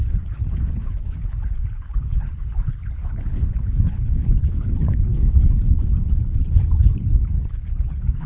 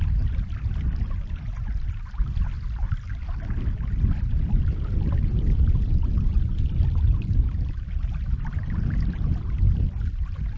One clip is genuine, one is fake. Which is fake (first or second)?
first